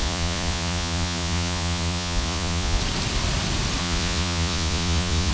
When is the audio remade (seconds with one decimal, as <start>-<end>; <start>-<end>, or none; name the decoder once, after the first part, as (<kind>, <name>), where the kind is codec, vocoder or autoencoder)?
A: 0.0-2.8 (vocoder, Vocos); 3.8-5.3